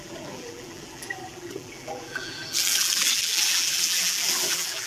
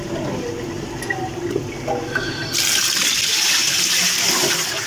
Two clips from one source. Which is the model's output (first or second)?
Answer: first